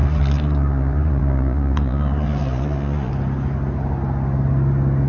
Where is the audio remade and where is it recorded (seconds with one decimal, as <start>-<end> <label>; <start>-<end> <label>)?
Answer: 0.0-3.1 remade; 3.1-5.1 recorded

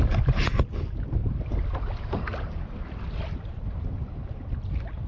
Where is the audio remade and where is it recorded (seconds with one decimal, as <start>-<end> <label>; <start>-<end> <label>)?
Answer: 0.0-5.1 recorded

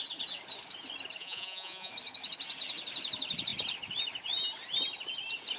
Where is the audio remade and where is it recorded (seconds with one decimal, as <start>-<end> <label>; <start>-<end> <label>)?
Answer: 0.0-1.2 recorded; 1.2-1.9 remade; 1.9-5.6 recorded

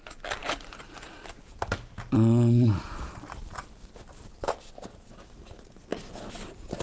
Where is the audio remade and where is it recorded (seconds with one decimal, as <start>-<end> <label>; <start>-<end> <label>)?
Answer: 0.0-6.8 recorded